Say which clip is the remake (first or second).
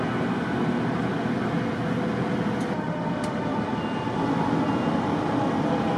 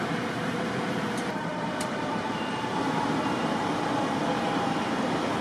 second